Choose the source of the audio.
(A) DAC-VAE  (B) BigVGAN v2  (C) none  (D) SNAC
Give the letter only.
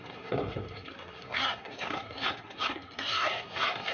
D